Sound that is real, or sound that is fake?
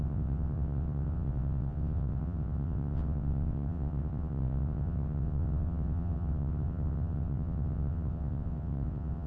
fake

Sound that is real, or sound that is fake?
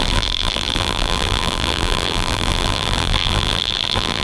fake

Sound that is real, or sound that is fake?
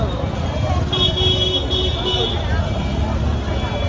real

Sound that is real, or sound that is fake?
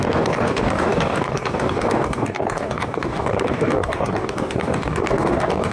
fake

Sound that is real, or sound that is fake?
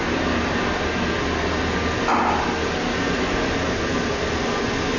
real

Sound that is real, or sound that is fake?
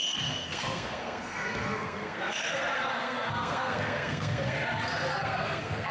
fake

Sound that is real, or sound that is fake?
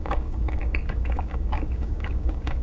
fake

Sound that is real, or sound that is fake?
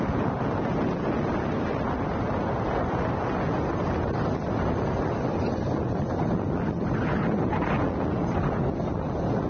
real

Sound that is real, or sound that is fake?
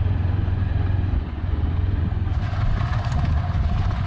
fake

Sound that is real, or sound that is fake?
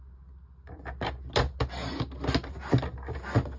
real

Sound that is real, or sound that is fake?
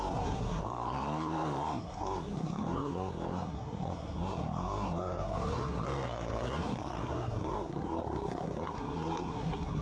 fake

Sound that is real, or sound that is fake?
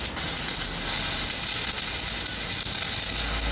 real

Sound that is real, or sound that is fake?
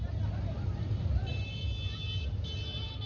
real